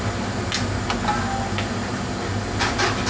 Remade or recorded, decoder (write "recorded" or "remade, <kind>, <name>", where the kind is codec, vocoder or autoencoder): recorded